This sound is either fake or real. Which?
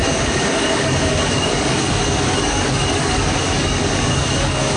fake